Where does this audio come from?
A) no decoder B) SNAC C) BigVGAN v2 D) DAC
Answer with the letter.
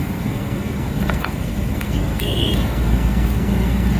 B